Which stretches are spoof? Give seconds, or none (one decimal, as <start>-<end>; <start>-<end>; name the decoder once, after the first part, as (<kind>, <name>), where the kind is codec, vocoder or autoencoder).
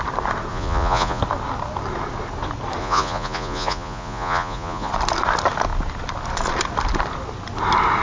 0.5-1.2 (vocoder, Vocos); 2.8-4.9